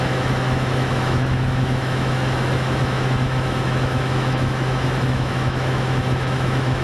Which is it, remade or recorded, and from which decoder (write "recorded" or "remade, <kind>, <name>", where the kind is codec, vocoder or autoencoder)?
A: remade, autoencoder, DAC-VAE